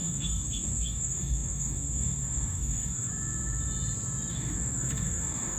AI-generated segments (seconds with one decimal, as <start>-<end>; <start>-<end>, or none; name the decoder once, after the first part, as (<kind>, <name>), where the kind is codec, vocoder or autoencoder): 0.0-3.1 (codec, DAC); 4.3-5.6